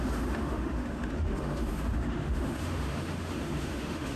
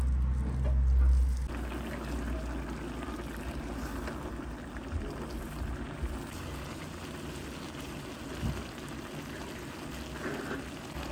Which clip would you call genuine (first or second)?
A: second